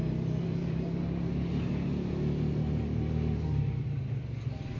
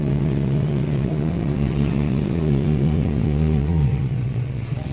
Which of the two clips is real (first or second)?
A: first